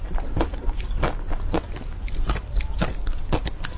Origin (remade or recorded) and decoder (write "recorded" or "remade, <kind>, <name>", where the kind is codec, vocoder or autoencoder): recorded